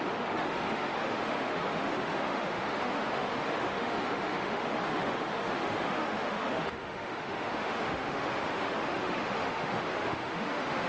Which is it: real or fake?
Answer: fake